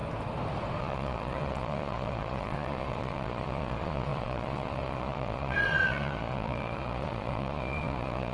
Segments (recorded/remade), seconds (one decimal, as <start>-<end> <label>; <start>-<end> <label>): 0.0-0.8 recorded; 0.8-8.3 remade